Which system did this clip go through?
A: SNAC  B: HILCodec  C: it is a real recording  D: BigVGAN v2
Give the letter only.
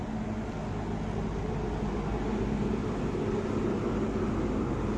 C